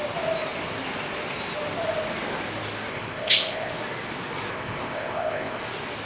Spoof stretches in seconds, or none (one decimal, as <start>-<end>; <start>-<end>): 2.9-3.7; 4.5-5.6